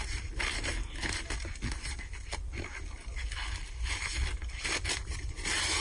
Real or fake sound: real